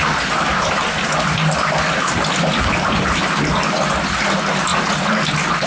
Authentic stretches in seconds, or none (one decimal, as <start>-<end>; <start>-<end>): 0.0-0.5; 3.9-5.7